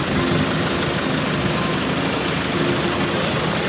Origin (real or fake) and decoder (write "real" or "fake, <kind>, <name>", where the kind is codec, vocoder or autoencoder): real